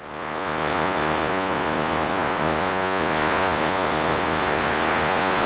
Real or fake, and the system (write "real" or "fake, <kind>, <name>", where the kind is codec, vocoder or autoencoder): fake, vocoder, Vocos